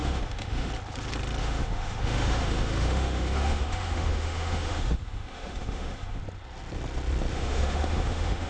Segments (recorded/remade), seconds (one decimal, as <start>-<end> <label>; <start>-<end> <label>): 0.0-0.7 remade; 0.7-1.4 recorded; 1.4-6.2 remade; 6.2-7.3 recorded; 7.3-8.5 remade